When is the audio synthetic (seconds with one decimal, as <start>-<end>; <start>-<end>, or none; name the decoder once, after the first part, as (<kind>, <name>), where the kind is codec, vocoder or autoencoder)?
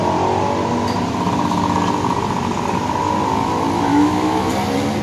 3.9-4.5 (autoencoder, DAC-VAE)